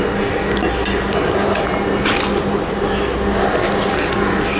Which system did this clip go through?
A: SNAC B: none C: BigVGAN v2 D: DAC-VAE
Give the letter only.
B